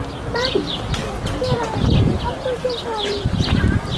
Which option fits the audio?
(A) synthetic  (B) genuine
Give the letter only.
A